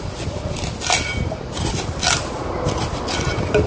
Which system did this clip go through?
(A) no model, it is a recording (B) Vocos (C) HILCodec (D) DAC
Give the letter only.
A